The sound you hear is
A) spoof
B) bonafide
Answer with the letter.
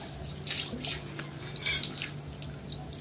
B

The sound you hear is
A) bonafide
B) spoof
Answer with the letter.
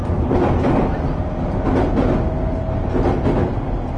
A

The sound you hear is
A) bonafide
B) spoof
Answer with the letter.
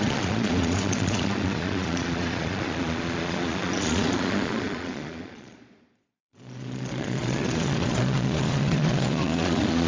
B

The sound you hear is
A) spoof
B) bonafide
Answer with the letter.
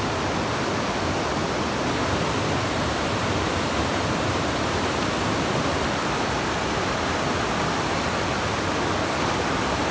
B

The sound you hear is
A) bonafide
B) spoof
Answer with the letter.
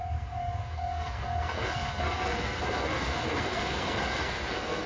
B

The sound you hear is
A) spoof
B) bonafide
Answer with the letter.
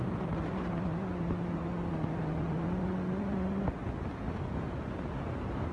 B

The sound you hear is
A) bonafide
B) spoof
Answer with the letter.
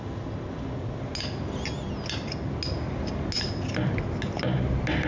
A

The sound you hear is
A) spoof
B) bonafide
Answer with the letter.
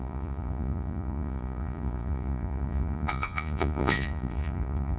A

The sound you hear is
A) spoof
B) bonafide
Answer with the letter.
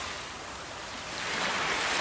B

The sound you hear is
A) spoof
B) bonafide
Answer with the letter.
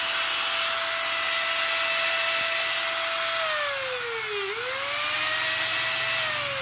B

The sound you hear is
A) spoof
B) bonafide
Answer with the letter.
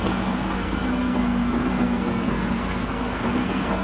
A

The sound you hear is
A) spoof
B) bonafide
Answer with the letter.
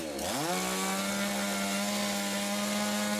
B